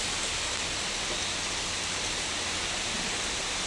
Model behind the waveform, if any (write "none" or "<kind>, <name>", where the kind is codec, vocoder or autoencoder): none